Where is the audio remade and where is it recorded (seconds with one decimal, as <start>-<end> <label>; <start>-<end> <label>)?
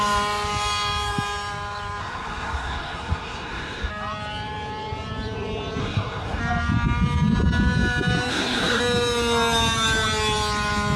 0.0-2.0 recorded; 2.0-3.9 remade; 3.9-5.8 recorded; 5.8-6.4 remade; 6.4-8.3 recorded; 8.3-8.8 remade; 8.8-11.0 recorded